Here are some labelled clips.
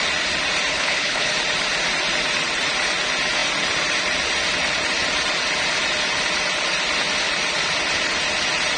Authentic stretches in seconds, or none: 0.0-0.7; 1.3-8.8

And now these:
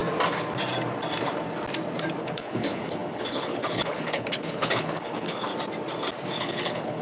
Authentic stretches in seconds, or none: 0.0-2.2; 5.5-6.3